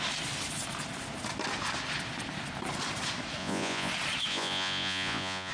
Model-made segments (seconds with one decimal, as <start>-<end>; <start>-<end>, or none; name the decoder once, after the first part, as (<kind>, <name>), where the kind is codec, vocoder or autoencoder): 3.4-3.9 (vocoder, Vocos); 4.3-5.5